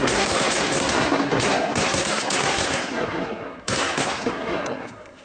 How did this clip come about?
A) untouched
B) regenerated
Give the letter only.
B